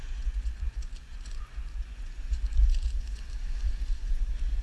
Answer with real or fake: fake